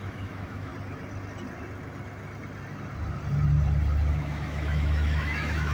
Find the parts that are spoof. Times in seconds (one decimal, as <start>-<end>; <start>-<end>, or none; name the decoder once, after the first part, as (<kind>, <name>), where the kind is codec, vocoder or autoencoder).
0.0-0.7 (autoencoder, DAC-VAE); 4.1-5.7